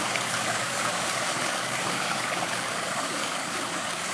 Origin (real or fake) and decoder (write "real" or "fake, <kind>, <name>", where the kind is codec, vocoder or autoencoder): fake, codec, DAC